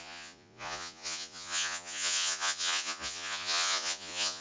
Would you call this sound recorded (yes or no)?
no